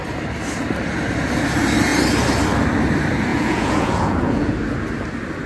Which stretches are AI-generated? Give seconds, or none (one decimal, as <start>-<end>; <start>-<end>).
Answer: 3.3-4.5